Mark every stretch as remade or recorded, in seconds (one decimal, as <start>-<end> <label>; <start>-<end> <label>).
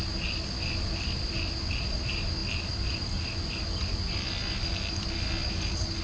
0.0-6.0 recorded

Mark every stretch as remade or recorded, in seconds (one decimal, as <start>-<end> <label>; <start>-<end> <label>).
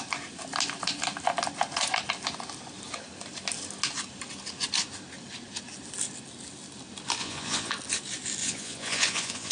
0.0-7.2 recorded; 7.2-7.7 remade; 7.7-8.4 recorded; 8.4-9.5 remade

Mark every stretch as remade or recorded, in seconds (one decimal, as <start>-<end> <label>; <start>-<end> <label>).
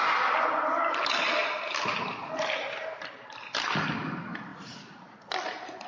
0.0-5.9 recorded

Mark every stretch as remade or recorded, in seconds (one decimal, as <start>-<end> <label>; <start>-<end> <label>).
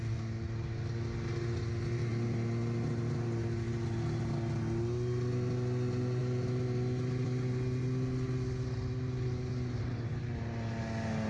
0.0-11.3 recorded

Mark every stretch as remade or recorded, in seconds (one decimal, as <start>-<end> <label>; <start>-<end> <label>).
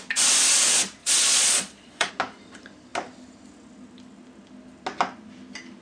0.0-1.0 recorded; 1.0-2.1 remade; 2.1-5.8 recorded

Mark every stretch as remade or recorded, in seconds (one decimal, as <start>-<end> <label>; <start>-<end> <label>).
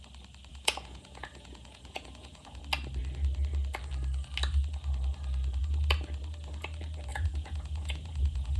0.0-0.5 recorded; 0.5-2.6 remade; 2.6-7.1 recorded; 7.1-8.6 remade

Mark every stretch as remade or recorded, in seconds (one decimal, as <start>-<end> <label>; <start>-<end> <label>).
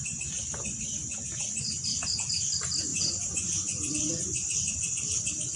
0.0-2.9 recorded; 2.9-3.9 remade; 3.9-5.6 recorded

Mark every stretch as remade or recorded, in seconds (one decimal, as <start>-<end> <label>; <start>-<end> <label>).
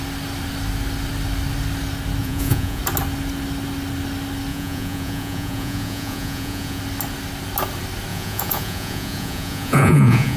0.0-2.2 recorded; 2.2-2.8 remade; 2.8-4.5 recorded; 4.5-6.8 remade; 6.8-8.1 recorded; 8.1-10.4 remade